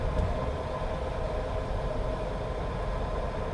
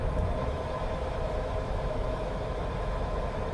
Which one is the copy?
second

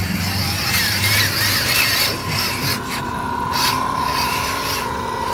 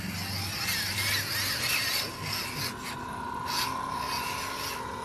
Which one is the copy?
first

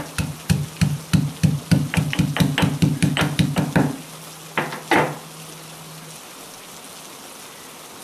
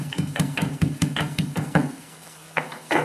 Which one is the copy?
second